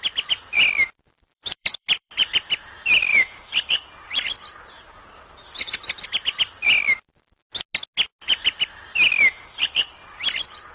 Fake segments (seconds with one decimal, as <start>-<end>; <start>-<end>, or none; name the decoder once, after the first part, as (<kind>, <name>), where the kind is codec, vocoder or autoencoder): 1.3-2.3 (vocoder, BigVGAN v2); 3.1-3.9